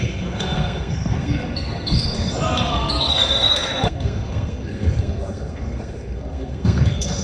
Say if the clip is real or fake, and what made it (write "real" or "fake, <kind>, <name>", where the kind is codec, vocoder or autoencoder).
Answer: fake, codec, SNAC